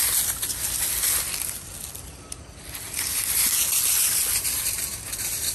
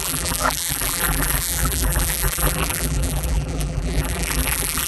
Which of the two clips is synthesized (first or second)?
second